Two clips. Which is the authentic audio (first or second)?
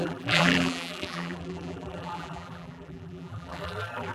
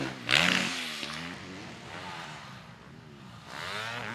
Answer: second